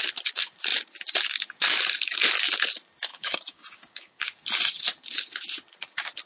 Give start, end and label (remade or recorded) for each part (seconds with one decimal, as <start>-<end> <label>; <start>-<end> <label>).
0.0-3.1 recorded; 3.1-4.2 remade; 4.2-6.3 recorded